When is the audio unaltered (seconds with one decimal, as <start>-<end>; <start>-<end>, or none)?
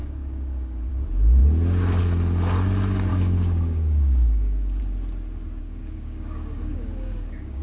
0.9-3.1; 4.8-5.6